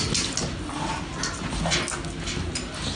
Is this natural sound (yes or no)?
yes